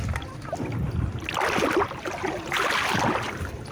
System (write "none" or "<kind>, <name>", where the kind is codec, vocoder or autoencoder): none